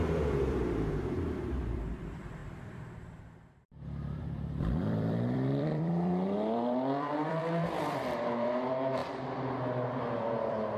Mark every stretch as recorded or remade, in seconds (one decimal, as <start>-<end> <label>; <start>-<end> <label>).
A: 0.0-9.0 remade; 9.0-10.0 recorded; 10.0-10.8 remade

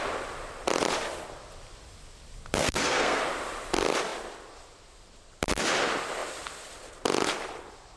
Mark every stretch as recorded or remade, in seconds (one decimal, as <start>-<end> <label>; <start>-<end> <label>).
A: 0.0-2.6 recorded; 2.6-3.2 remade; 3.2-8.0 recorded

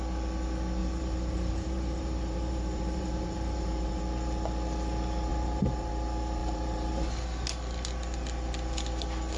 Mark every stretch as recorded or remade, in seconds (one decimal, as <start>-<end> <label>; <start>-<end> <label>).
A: 0.0-0.8 recorded; 0.8-4.0 remade; 4.0-5.3 recorded; 5.3-5.9 remade; 5.9-6.4 recorded; 6.4-6.9 remade; 6.9-9.4 recorded